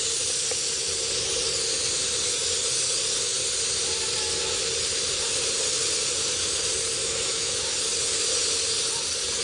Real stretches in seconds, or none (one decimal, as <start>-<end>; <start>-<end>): 0.0-7.0; 7.7-9.4